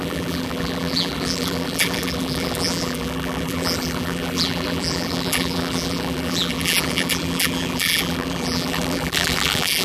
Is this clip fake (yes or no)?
yes